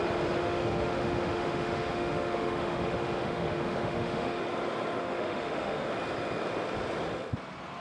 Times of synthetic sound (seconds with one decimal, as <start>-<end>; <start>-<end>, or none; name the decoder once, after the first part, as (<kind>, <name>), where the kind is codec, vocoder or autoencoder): 0.4-4.4 (autoencoder, DAC-VAE); 5.0-5.9